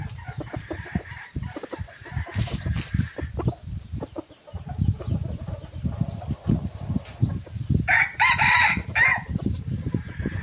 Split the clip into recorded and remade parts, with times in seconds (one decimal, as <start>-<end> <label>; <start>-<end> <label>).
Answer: 0.0-3.1 remade; 3.1-6.8 recorded; 6.8-10.4 remade